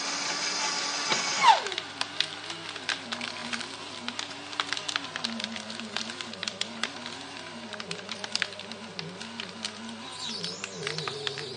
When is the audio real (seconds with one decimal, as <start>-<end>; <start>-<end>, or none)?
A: 0.0-1.3; 1.9-6.4; 8.4-11.6